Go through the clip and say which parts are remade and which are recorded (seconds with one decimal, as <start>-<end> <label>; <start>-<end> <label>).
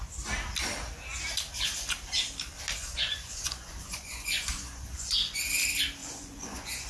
0.0-2.8 recorded; 2.8-5.5 remade; 5.5-6.0 recorded; 6.0-6.9 remade